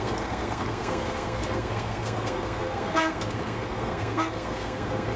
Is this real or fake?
fake